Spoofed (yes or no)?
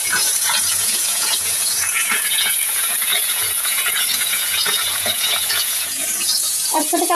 yes